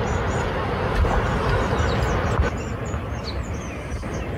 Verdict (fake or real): real